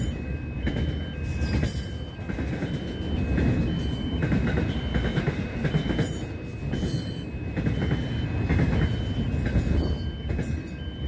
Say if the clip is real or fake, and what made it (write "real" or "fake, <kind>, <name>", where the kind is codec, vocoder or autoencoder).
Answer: real